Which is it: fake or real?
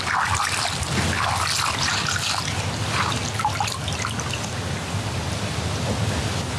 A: real